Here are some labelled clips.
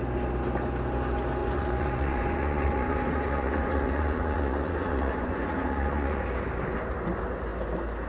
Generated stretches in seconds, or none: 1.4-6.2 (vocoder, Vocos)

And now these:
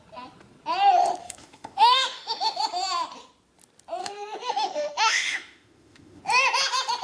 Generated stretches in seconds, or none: 1.2-2.6 (autoencoder, DAC-VAE); 4.0-6.2

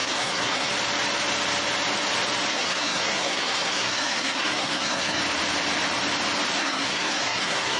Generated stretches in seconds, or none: 0.0-0.7 (codec, SNAC); 2.5-5.2; 6.6-7.8

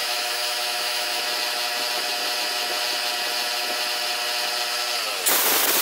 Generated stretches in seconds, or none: 0.0-1.2 (autoencoder, DAC-VAE)

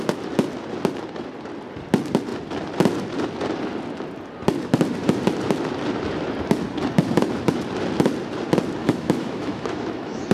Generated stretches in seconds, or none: 8.8-10.3 (autoencoder, DAC-VAE)